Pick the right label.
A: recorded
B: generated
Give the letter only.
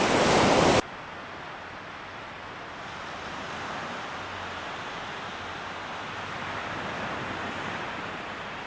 A